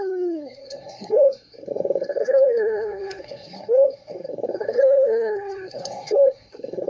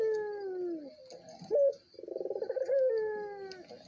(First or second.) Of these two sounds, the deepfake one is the first